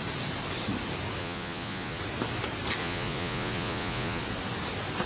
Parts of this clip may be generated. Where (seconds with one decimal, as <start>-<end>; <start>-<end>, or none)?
1.2-2.0; 2.8-4.2